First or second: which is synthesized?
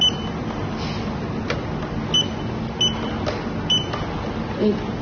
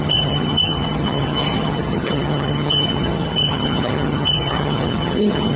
second